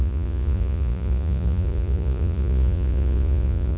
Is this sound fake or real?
fake